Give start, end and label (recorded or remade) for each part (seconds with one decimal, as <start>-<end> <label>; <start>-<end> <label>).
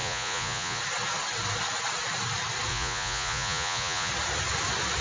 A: 0.0-0.8 remade; 0.8-2.7 recorded; 2.7-4.1 remade; 4.1-5.0 recorded